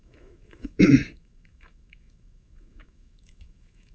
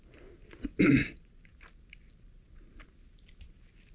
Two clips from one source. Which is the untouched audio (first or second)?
second